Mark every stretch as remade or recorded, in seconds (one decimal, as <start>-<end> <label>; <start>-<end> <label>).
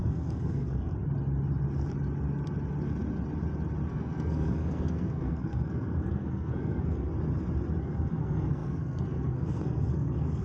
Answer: 0.0-0.9 remade; 0.9-3.9 recorded; 3.9-7.1 remade; 7.1-7.8 recorded; 7.8-10.4 remade